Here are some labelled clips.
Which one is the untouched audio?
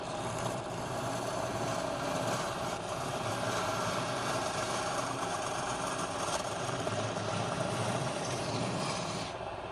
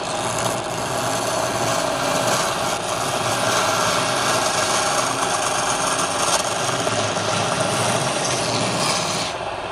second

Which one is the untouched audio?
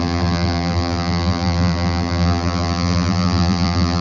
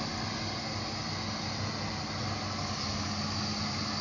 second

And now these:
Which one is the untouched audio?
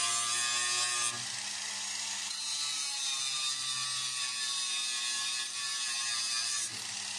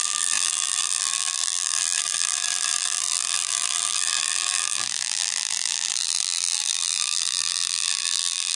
first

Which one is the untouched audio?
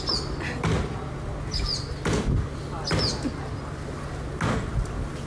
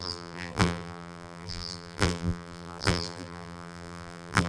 first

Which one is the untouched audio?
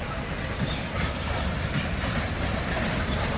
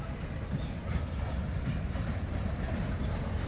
second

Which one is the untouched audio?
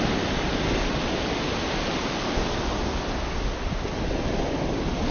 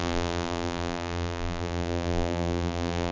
first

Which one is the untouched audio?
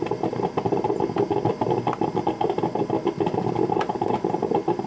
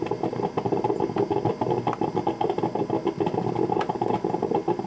second